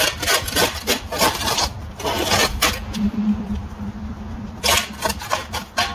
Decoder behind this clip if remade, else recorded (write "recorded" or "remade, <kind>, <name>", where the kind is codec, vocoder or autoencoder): remade, vocoder, BigVGAN v2